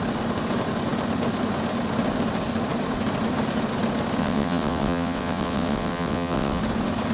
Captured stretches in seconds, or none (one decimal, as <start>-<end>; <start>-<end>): 0.0-4.2; 6.6-7.1